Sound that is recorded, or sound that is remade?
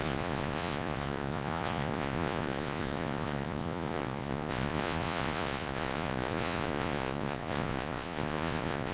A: remade